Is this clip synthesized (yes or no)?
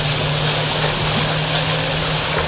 no